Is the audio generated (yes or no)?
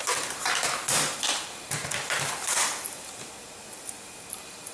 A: yes